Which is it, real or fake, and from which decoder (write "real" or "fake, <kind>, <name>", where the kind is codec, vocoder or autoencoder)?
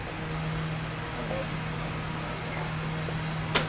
real